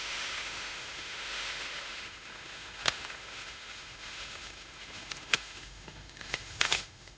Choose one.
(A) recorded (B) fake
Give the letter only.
B